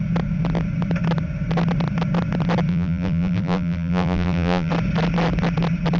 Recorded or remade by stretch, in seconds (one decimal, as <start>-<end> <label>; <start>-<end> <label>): 0.0-2.7 recorded; 2.7-4.7 remade; 4.7-6.0 recorded